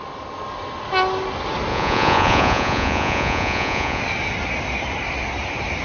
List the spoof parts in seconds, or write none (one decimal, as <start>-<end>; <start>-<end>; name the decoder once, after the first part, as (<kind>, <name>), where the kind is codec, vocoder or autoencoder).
1.7-4.0 (vocoder, Vocos)